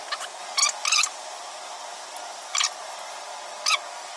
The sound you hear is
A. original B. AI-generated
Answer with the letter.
A